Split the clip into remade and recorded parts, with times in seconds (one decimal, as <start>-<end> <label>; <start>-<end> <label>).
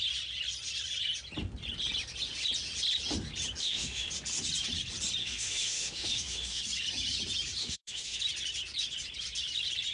0.0-3.6 recorded; 3.6-4.1 remade; 4.1-5.2 recorded; 5.2-6.6 remade; 6.6-7.6 recorded; 7.6-8.2 remade; 8.2-9.9 recorded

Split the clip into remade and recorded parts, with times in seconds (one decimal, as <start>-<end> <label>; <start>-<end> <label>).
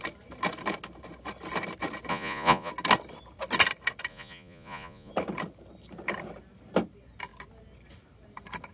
0.0-2.1 recorded; 2.1-2.7 remade; 2.7-4.1 recorded; 4.1-5.1 remade; 5.1-8.7 recorded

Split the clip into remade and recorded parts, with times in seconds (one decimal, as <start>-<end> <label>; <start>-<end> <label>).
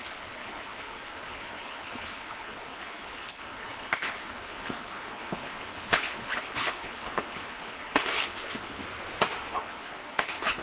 0.0-8.8 remade; 8.8-9.5 recorded; 9.5-10.6 remade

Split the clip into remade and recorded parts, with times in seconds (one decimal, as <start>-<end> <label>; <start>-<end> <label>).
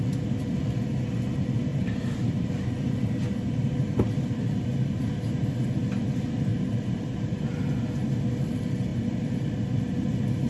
0.0-1.7 recorded; 1.7-2.9 remade; 2.9-6.5 recorded; 6.5-7.4 remade; 7.4-10.5 recorded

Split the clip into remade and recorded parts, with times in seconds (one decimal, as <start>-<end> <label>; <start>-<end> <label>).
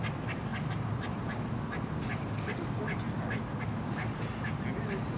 0.0-5.2 recorded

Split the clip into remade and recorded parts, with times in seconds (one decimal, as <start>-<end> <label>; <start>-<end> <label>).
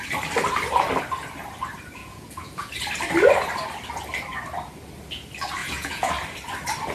0.0-2.0 recorded; 2.0-2.7 remade; 2.7-5.6 recorded; 5.6-6.1 remade; 6.1-6.9 recorded